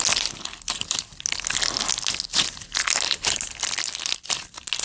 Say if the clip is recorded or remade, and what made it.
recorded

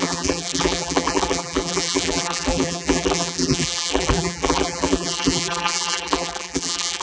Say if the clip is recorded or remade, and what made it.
remade, vocoder, BigVGAN v2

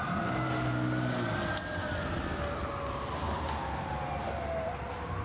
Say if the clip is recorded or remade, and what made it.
recorded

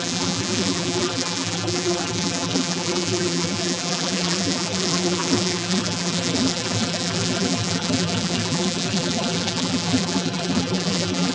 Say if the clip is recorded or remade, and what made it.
remade, vocoder, BigVGAN v2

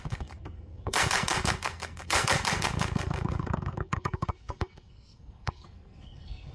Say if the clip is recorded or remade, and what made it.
remade, codec, SNAC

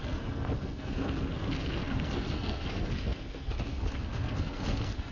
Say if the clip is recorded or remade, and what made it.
remade, codec, SNAC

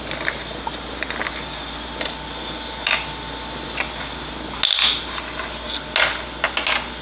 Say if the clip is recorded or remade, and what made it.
recorded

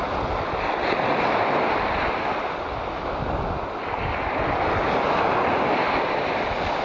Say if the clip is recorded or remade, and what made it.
recorded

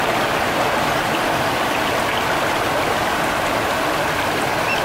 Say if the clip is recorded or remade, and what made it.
recorded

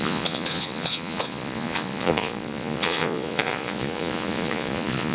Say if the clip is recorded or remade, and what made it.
remade, vocoder, Vocos